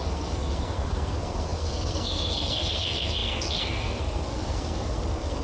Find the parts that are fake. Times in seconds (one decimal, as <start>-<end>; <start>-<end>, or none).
0.0-5.4